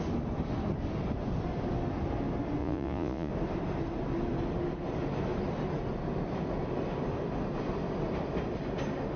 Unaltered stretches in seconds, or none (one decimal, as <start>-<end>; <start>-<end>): 0.0-2.6; 3.3-9.2